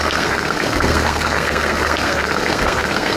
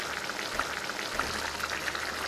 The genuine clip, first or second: second